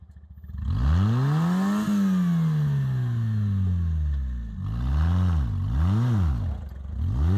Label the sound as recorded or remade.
recorded